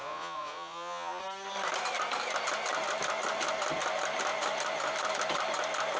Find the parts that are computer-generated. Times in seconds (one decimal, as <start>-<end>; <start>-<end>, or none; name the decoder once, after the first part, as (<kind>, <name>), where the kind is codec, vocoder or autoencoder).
0.0-1.2 (vocoder, Vocos)